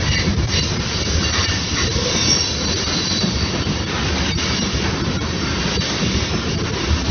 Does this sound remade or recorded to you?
recorded